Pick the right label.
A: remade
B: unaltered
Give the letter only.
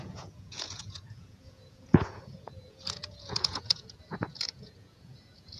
A